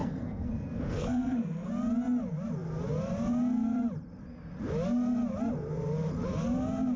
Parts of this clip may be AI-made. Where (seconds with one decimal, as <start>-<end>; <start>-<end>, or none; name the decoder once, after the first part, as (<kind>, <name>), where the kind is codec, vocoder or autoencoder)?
0.0-1.7 (codec, SNAC)